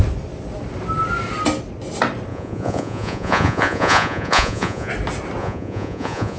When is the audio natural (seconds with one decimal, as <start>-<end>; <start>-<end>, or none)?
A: 0.0-2.3; 4.9-5.4